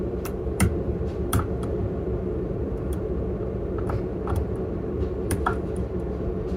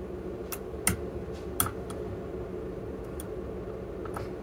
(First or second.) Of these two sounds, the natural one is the second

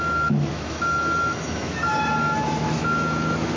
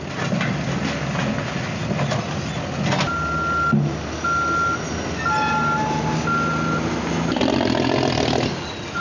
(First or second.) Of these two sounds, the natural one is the second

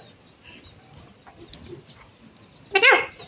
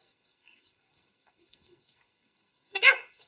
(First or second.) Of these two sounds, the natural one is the first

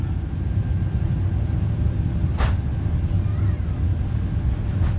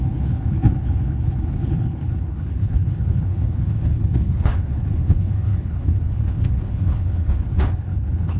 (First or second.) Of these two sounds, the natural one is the first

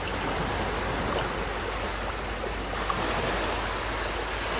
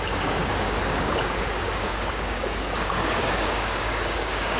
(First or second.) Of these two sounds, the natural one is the first